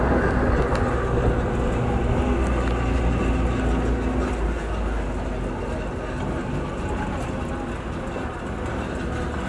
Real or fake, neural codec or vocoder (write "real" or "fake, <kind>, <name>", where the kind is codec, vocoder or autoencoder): real